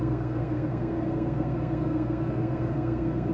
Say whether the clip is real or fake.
fake